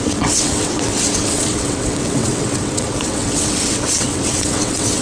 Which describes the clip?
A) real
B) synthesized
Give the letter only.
B